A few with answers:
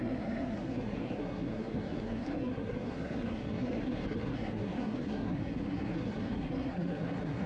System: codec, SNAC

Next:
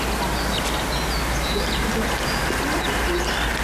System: none